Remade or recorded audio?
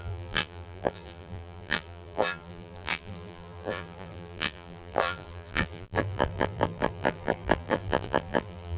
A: remade